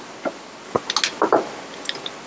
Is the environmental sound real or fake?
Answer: real